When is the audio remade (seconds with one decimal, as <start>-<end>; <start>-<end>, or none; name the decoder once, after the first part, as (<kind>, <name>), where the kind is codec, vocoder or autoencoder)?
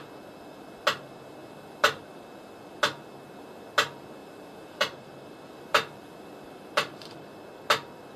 1.4-2.0 (vocoder, BigVGAN v2); 4.2-7.6